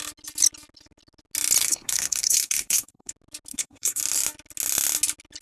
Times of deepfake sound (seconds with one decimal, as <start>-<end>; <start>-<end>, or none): 1.6-3.1; 3.5-4.0